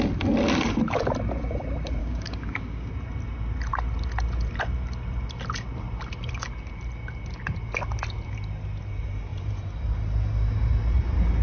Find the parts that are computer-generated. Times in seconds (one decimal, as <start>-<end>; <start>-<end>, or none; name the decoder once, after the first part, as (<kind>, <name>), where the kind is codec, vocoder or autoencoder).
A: 2.0-2.9 (codec, DAC)